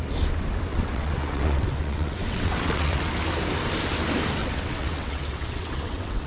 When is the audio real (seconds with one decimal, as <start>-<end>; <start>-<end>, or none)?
0.0-0.7; 3.0-4.4